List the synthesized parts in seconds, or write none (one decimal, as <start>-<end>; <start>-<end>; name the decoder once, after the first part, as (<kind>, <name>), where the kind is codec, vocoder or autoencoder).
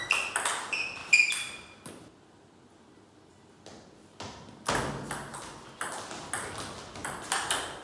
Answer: none